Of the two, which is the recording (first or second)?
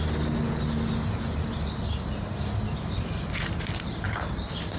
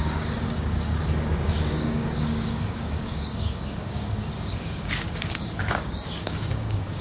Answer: first